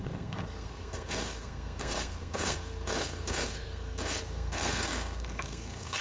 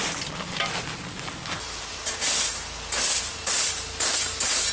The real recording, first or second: second